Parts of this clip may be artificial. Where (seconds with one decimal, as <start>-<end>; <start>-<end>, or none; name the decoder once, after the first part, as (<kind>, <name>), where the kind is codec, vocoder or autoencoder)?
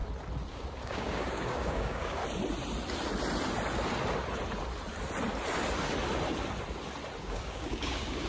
0.5-2.2 (codec, DAC); 7.2-8.3